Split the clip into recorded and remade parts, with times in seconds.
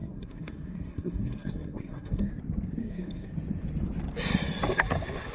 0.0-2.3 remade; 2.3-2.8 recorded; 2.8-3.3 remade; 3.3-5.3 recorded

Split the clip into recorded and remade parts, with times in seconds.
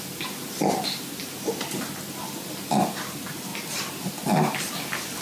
0.0-5.2 recorded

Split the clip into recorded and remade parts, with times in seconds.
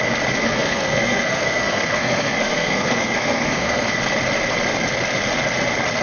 0.0-0.4 recorded; 0.4-4.0 remade; 4.0-6.0 recorded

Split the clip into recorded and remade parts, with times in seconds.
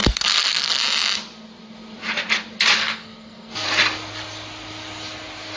0.0-0.8 remade; 0.8-2.8 recorded; 2.8-3.5 remade; 3.5-5.6 recorded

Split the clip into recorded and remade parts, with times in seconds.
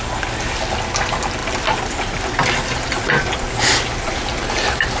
0.0-5.0 recorded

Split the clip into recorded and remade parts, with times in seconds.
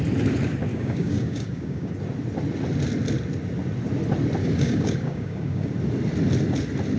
0.0-0.7 recorded; 0.7-1.9 remade; 1.9-4.4 recorded; 4.4-5.7 remade; 5.7-7.0 recorded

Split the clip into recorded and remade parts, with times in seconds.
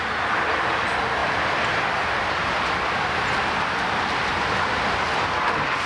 0.0-5.9 recorded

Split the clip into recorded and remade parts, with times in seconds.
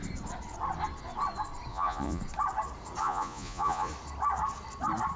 0.0-1.7 recorded; 1.7-2.2 remade; 2.2-3.0 recorded; 3.0-3.9 remade; 3.9-5.2 recorded